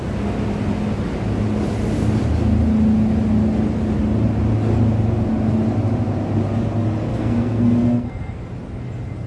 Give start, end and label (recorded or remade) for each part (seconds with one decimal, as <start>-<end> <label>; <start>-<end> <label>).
0.0-7.1 recorded; 7.1-8.4 remade; 8.4-9.3 recorded

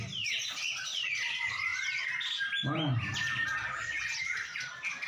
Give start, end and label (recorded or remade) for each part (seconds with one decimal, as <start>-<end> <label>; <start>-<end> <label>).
0.0-5.1 recorded

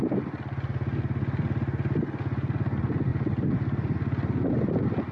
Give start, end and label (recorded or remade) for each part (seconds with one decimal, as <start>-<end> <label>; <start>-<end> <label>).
0.0-5.1 recorded

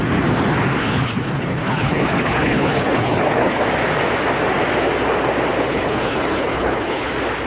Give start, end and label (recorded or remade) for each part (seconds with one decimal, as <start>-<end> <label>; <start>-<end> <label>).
0.0-0.8 recorded; 0.8-3.6 remade; 3.6-5.7 recorded; 5.7-7.1 remade; 7.1-7.5 recorded

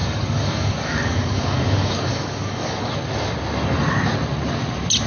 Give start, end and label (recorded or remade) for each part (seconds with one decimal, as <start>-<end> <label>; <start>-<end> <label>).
0.0-2.9 remade; 2.9-5.1 recorded

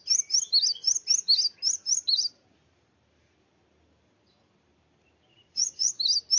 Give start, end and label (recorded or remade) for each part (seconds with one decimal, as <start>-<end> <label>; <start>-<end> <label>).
0.0-5.3 recorded; 5.3-5.9 remade; 5.9-6.4 recorded